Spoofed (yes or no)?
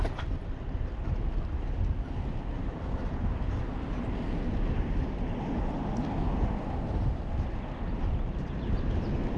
no